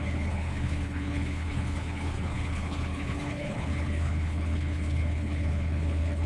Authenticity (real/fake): fake